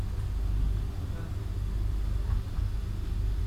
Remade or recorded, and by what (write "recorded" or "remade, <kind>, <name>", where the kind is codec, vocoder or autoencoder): recorded